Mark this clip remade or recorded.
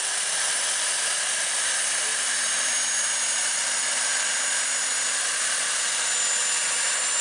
recorded